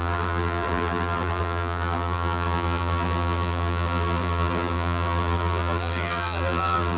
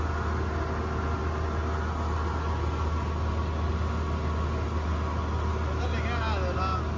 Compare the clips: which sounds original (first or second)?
second